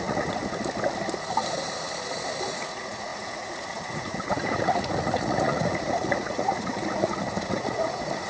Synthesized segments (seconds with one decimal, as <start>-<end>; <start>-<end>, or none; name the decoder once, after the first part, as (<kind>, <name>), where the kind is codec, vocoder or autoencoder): 0.0-0.4 (vocoder, Vocos); 2.5-8.3